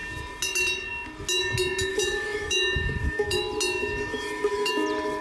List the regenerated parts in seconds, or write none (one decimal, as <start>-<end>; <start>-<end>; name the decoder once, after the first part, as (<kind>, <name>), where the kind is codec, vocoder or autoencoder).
1.9-3.4 (autoencoder, DAC-VAE); 3.8-4.7